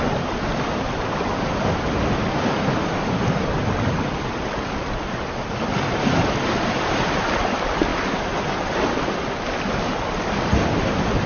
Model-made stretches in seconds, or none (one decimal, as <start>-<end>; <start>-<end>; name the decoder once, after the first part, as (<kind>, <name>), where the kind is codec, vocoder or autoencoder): none